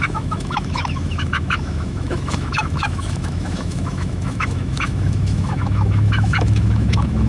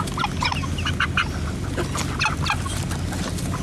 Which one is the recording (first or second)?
second